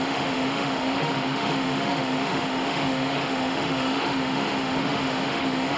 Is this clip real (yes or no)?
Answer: no